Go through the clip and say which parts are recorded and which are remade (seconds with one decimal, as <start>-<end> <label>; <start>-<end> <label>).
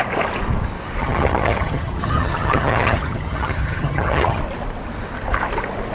0.0-1.0 recorded; 1.0-4.4 remade; 4.4-5.9 recorded